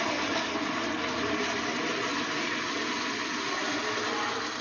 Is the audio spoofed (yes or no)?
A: no